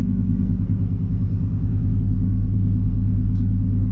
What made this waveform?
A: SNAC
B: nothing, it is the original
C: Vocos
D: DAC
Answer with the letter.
A